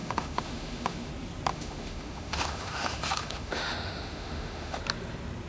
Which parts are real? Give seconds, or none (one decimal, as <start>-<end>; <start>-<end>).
1.1-1.5; 4.8-5.5